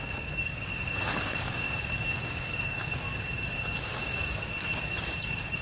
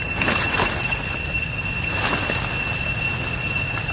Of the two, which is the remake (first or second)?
first